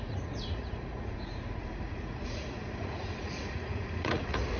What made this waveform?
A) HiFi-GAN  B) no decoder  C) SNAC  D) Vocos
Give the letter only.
D